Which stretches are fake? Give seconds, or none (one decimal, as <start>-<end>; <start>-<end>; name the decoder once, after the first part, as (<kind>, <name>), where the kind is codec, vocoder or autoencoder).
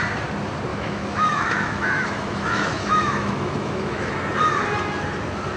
0.7-4.1 (autoencoder, DAC-VAE)